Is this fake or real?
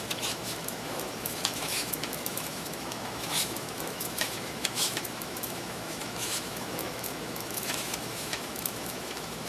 fake